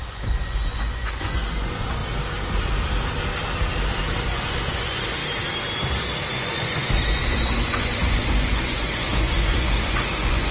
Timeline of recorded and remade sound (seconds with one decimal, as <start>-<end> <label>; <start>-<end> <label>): 0.0-2.0 remade; 2.0-4.2 recorded; 4.2-5.2 remade; 5.2-6.3 recorded; 6.3-10.5 remade